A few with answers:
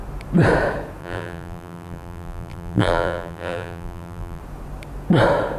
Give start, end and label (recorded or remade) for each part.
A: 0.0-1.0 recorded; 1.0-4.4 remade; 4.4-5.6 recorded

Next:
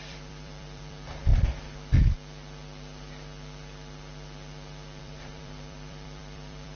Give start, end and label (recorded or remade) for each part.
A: 0.0-1.3 remade; 1.3-5.0 recorded; 5.0-6.8 remade

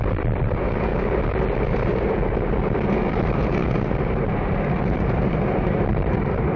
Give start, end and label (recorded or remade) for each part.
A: 0.0-0.9 remade; 0.9-1.6 recorded; 1.6-6.6 remade